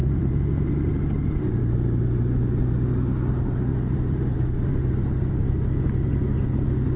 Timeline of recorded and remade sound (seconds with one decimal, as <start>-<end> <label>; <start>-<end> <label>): 0.0-1.6 remade; 1.6-3.7 recorded; 3.7-4.7 remade; 4.7-7.0 recorded